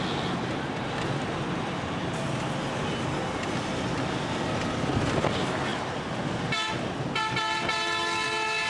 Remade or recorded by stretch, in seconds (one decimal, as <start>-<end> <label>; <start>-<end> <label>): 0.0-8.7 recorded